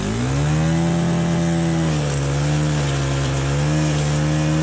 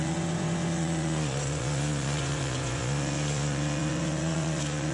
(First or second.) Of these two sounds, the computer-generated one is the second